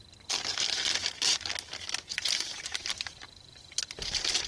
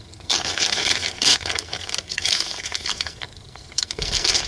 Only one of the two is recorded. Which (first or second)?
first